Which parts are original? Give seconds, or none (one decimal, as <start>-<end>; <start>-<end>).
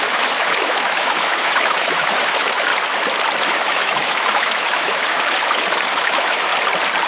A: 2.7-3.4; 6.5-7.1